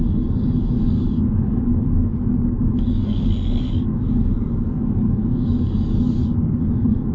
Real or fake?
fake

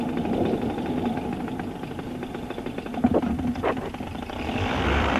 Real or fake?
fake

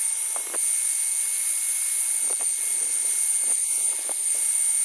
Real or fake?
real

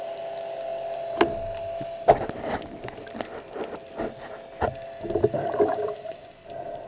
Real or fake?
real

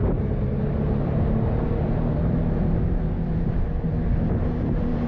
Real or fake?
fake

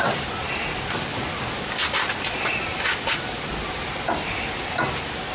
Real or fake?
real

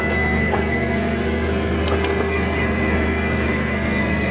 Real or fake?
fake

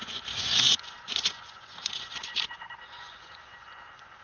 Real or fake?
fake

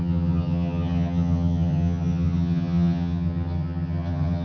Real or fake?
fake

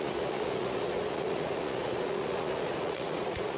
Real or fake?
fake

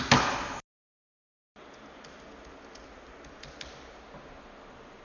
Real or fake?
real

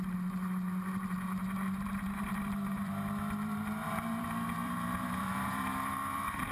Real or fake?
fake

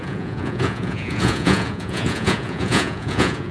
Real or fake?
fake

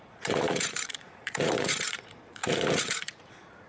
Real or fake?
fake